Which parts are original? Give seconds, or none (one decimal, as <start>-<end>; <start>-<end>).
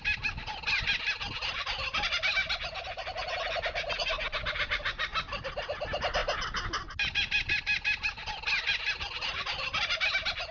0.0-10.5